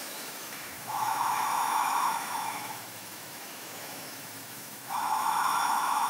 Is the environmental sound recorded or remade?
remade